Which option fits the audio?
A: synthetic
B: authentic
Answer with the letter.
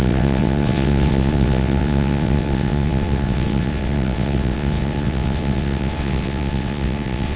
A